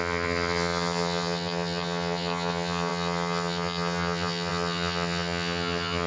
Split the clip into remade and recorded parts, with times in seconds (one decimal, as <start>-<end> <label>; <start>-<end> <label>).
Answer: 0.0-6.1 remade